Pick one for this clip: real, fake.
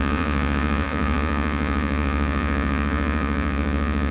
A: fake